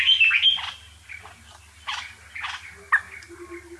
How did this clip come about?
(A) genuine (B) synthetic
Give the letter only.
A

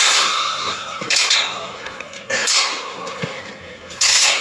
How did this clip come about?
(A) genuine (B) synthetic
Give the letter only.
B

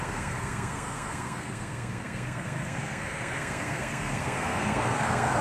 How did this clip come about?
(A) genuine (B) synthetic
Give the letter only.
B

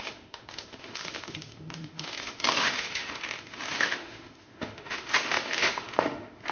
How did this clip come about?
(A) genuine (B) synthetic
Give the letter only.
B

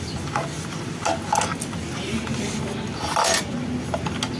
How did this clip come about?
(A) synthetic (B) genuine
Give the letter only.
B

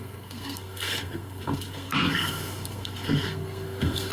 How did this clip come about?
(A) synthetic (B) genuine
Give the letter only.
A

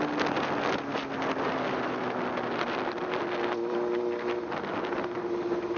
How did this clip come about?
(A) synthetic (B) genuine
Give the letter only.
B